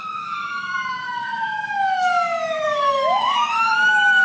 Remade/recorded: remade